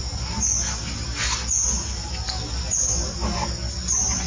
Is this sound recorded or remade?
recorded